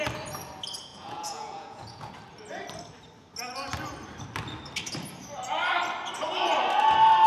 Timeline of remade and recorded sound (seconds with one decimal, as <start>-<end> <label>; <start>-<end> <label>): 0.0-0.9 recorded; 0.9-2.1 remade; 2.1-7.3 recorded